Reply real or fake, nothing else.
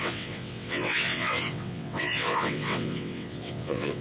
fake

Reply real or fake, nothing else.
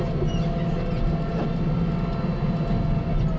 real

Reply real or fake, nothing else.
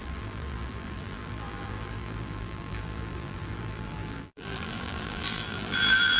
fake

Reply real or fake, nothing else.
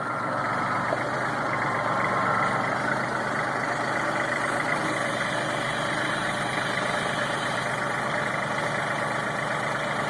real